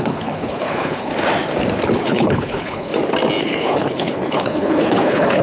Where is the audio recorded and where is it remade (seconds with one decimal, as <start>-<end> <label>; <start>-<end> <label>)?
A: 0.0-1.1 remade; 1.1-2.0 recorded; 2.0-2.9 remade; 2.9-3.4 recorded; 3.4-5.4 remade